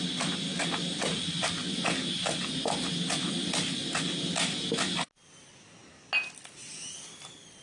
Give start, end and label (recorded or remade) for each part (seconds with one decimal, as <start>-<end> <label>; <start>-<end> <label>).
0.0-7.6 recorded